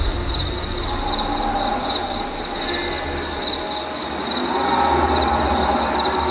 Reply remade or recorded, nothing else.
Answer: recorded